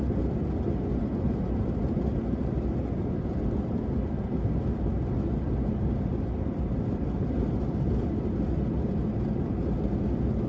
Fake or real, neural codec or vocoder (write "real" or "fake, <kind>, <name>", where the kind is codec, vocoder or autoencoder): real